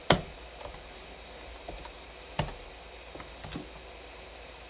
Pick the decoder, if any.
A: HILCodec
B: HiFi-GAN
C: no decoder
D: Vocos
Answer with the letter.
C